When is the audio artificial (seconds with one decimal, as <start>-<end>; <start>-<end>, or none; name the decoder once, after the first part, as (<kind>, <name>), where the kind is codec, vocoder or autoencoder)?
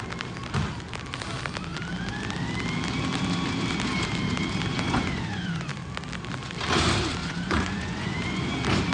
4.7-5.7 (vocoder, Vocos); 7.2-8.5